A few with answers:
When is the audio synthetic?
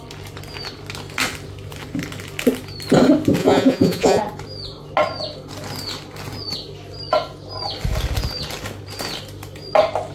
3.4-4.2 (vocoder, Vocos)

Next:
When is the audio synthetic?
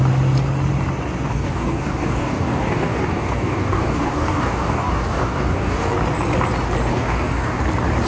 1.3-5.9 (codec, DAC); 6.9-7.6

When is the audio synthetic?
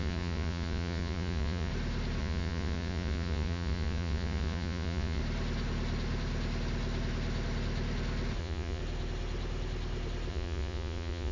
0.0-1.7 (vocoder, Vocos); 2.2-5.2; 8.4-8.8; 10.3-11.3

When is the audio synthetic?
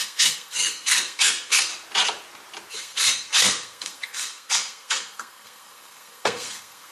0.0-1.7 (codec, SNAC); 2.7-6.9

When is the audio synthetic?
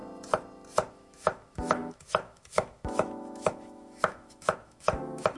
0.9-5.4 (autoencoder, DAC-VAE)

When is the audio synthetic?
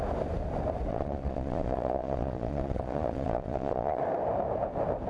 0.9-4.0 (vocoder, Vocos)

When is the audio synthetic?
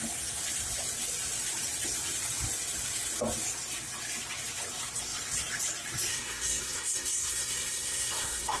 6.1-8.6 (codec, SNAC)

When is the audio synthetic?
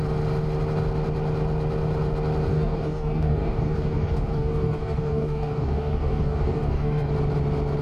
2.5-7.1 (codec, DAC)